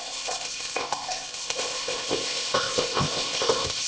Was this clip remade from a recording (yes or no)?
yes